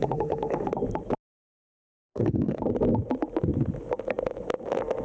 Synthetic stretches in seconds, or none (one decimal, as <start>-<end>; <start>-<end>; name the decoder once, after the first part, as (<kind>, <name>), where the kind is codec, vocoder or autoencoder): 0.0-0.7 (codec, SNAC); 1.9-2.6

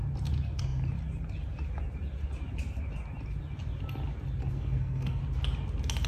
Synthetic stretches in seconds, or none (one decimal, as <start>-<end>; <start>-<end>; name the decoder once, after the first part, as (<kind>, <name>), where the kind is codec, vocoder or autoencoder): 4.4-5.2 (codec, SNAC)

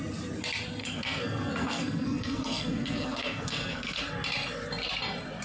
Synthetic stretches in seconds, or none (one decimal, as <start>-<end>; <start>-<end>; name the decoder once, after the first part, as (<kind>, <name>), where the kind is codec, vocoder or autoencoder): 0.8-4.0 (codec, SNAC)